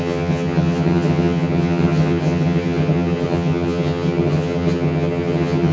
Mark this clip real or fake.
fake